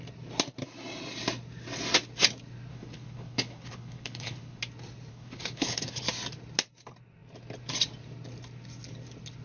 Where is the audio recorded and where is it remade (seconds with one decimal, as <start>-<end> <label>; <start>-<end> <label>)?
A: 0.0-2.7 recorded; 2.7-4.6 remade; 4.6-5.1 recorded; 5.1-6.0 remade; 6.0-9.4 recorded